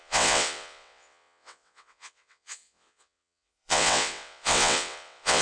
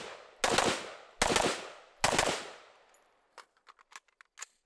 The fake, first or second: first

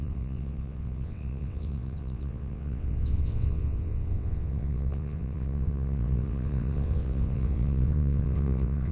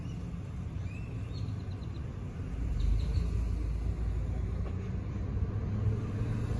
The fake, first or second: first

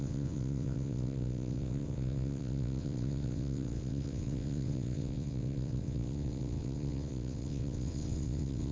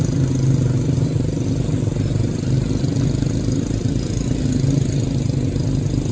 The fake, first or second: first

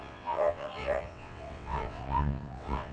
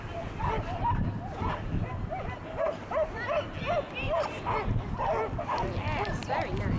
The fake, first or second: first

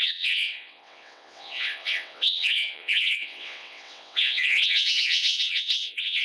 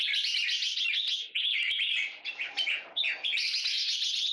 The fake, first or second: first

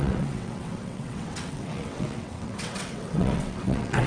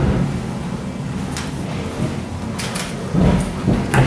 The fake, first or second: first